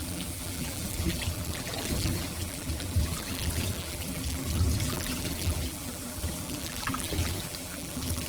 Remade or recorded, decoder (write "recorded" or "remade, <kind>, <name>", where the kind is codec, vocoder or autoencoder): remade, vocoder, BigVGAN v2